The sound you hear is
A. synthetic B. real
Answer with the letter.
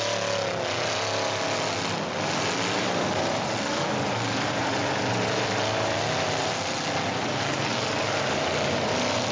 B